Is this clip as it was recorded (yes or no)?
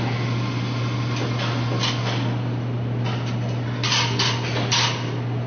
yes